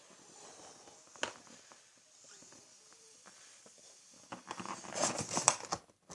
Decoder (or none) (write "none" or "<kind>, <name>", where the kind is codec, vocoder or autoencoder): none